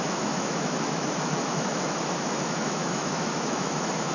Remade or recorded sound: remade